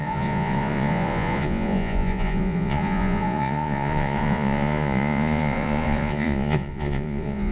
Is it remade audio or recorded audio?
remade